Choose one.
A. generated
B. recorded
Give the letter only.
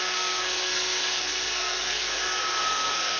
A